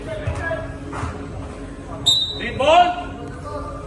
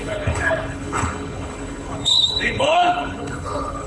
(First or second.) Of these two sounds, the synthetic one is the second